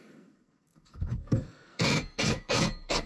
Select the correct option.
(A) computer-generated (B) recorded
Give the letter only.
A